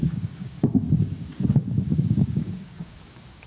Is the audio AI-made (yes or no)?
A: yes